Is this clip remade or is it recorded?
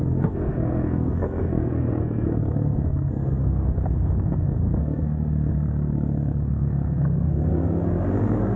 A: remade